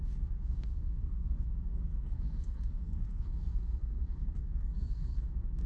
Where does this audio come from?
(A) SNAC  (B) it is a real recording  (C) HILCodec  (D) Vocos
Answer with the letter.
A